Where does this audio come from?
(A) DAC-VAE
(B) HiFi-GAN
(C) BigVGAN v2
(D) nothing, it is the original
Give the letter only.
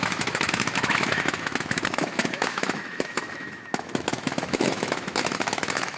A